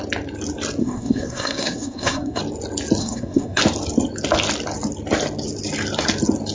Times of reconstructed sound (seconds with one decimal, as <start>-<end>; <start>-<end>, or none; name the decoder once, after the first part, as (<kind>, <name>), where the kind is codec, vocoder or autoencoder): 0.8-2.4 (codec, SNAC); 3.0-3.6